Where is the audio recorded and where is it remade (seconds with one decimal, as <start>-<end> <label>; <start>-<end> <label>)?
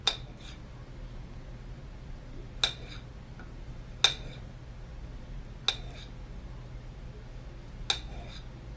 0.0-8.8 recorded